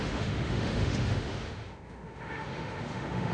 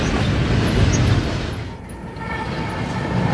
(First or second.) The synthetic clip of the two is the first